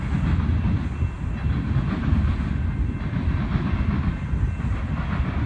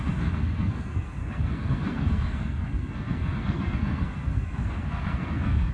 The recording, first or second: first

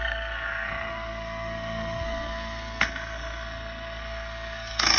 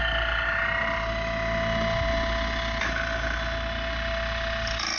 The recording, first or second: second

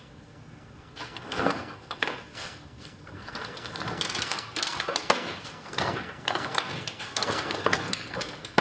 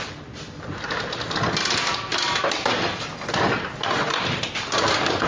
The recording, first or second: second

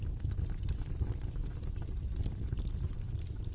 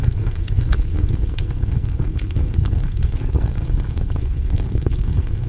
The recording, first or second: first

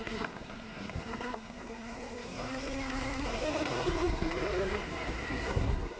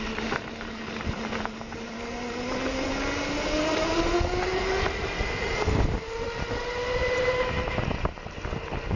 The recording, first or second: second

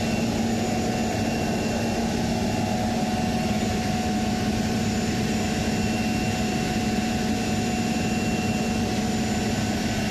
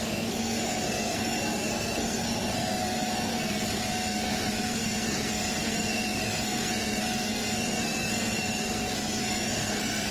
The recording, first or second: first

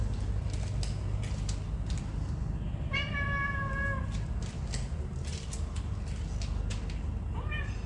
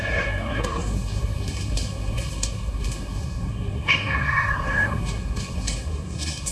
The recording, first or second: first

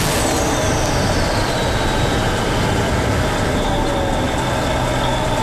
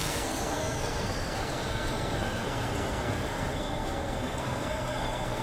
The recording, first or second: first